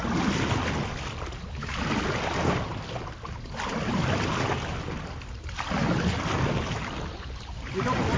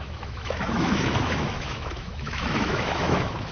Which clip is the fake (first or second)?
second